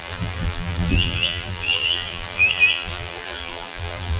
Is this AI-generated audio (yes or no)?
yes